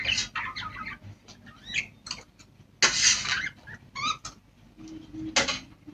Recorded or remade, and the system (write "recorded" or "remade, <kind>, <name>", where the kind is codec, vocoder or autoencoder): recorded